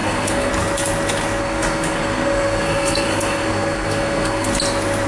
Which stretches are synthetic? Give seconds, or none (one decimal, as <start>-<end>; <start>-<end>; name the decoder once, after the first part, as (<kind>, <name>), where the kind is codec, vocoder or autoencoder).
0.0-0.5 (codec, SNAC); 1.4-4.5